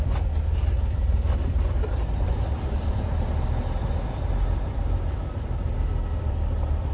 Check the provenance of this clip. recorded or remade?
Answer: remade